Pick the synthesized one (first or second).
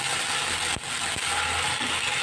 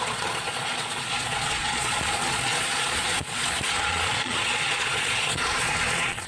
second